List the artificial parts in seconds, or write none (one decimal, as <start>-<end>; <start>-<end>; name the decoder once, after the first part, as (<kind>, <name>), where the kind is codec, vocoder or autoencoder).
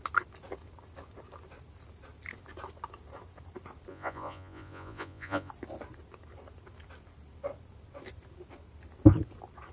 3.9-5.5 (vocoder, Vocos)